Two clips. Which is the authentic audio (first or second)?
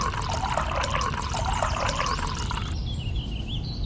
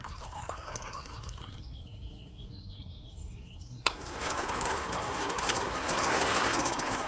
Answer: first